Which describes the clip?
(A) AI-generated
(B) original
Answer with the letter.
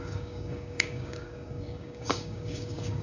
A